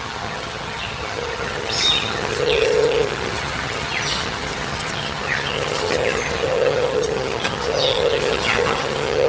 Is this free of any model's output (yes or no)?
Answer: no